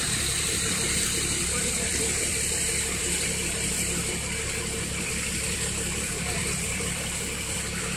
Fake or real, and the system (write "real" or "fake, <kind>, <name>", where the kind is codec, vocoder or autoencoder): fake, vocoder, BigVGAN v2